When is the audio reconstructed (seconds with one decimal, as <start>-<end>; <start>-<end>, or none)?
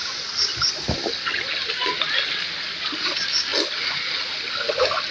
none